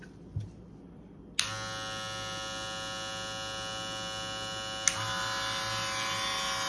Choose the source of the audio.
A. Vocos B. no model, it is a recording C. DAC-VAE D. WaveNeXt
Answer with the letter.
B